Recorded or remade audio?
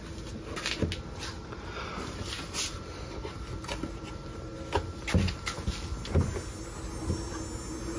recorded